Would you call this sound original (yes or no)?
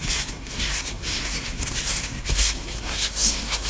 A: no